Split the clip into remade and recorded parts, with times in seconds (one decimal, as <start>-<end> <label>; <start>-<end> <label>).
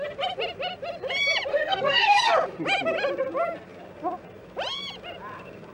0.0-1.5 recorded; 1.5-2.3 remade; 2.3-5.7 recorded